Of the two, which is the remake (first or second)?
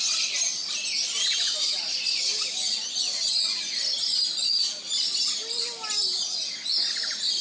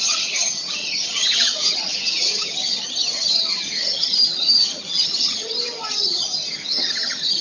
second